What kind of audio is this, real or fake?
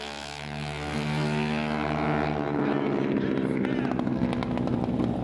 real